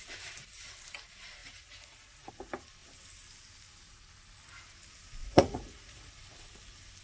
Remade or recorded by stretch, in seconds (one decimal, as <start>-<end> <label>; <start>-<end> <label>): 0.0-1.4 recorded; 1.4-2.3 remade; 2.3-5.2 recorded; 5.2-6.1 remade; 6.1-7.0 recorded